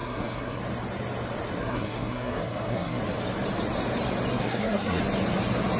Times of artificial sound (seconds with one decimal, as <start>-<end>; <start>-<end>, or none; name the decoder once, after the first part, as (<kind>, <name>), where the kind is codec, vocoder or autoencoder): 0.0-0.6 (codec, SNAC); 1.6-3.0; 4.3-5.0